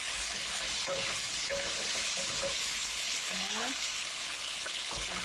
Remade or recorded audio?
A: remade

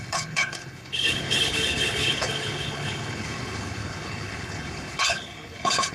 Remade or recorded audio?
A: remade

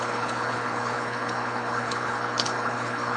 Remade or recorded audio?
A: remade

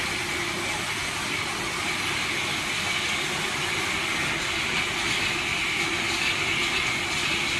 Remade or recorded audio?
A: recorded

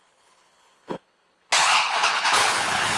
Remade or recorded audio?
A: remade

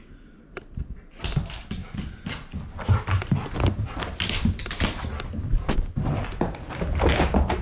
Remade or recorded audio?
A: recorded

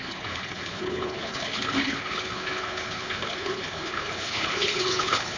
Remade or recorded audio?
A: remade